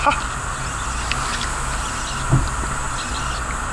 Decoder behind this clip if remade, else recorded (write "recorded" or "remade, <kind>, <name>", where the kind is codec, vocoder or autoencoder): recorded